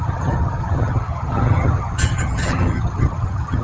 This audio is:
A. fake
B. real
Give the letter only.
A